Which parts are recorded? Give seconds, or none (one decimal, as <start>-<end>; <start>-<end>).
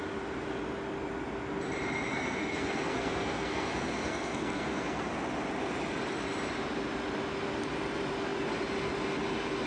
0.0-2.1; 5.1-9.7